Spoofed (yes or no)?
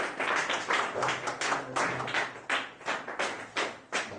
no